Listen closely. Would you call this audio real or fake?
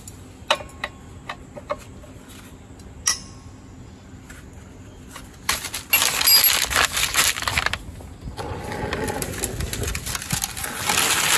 real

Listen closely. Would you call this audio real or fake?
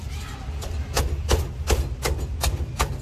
real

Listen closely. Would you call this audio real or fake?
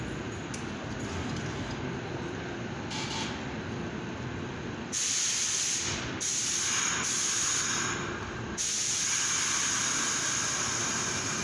real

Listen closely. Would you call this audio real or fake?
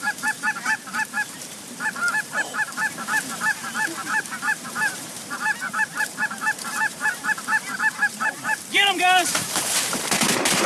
fake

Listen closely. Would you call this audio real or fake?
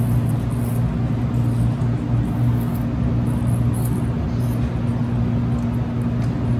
real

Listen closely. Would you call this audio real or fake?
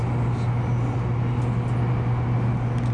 real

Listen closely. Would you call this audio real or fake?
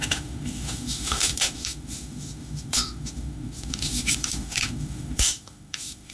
fake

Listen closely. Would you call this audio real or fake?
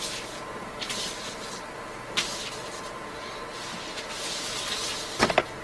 real